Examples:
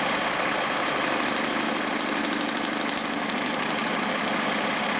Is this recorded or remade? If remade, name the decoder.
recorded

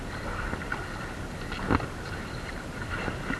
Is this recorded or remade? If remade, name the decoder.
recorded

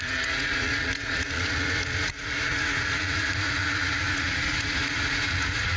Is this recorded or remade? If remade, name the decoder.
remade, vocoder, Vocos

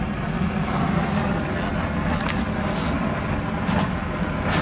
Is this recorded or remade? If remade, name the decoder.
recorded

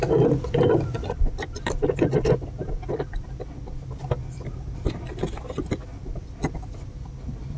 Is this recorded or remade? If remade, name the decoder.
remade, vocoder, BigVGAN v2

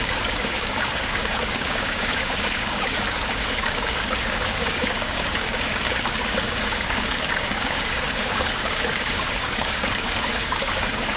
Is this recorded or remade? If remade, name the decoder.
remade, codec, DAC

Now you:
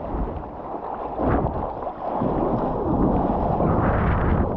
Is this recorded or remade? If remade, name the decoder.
recorded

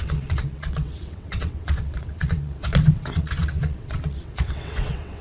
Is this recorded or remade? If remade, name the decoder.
remade, vocoder, WaveNeXt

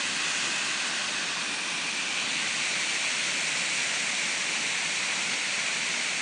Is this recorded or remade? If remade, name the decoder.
recorded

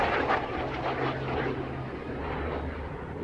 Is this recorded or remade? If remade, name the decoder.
recorded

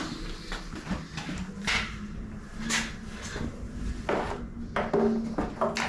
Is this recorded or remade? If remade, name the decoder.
recorded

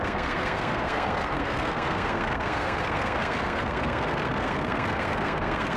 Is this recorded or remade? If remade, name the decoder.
remade, codec, SNAC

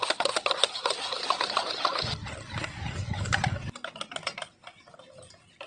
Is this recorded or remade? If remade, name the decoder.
recorded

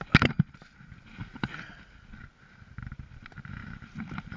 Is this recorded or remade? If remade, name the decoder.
recorded